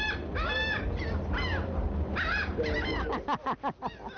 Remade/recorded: recorded